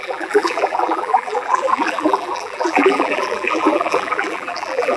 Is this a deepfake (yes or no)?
yes